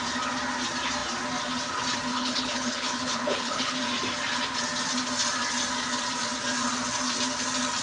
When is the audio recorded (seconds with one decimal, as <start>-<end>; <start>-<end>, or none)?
0.0-2.1; 3.8-7.8